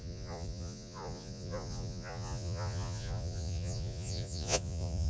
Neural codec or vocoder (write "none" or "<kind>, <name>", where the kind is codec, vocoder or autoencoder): vocoder, Vocos